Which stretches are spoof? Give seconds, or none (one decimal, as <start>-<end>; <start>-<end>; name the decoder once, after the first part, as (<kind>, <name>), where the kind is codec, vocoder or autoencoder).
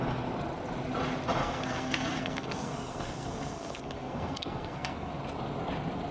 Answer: 1.4-5.1 (codec, SNAC)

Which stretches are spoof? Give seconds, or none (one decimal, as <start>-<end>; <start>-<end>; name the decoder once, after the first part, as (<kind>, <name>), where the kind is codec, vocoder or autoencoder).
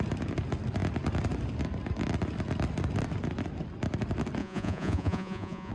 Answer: 4.4-5.7 (vocoder, Vocos)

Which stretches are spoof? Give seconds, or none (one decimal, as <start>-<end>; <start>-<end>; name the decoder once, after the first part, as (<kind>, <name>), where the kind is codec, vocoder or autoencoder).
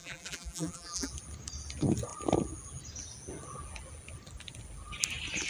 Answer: 0.0-1.1 (vocoder, BigVGAN v2)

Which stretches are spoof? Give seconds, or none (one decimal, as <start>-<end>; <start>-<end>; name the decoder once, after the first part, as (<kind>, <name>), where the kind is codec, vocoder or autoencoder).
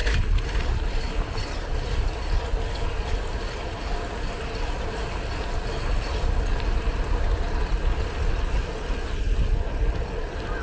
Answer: none